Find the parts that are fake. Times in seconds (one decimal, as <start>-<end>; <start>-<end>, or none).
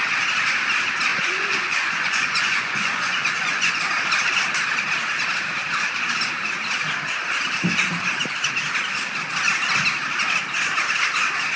1.1-3.8